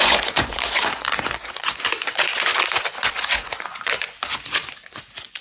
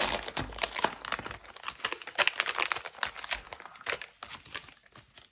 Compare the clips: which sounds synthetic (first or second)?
first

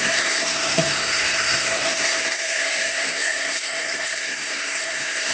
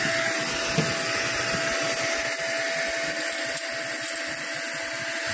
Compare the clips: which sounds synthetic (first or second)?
first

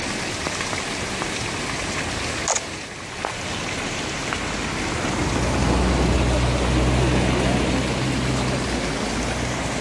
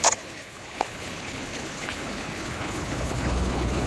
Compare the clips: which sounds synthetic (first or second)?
second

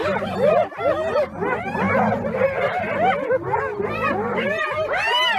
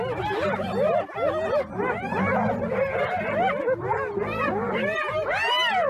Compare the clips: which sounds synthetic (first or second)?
first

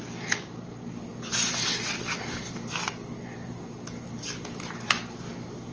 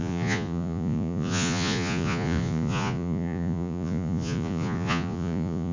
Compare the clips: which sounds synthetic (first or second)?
second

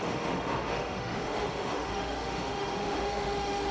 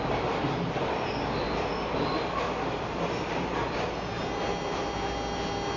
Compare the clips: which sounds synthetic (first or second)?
first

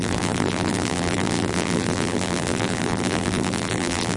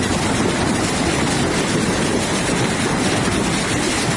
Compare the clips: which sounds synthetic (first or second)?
first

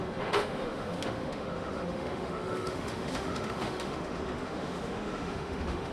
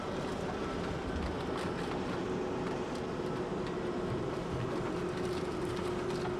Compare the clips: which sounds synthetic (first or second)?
first